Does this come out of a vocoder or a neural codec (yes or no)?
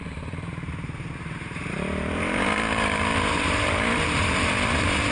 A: yes